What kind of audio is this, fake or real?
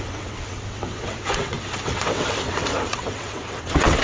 fake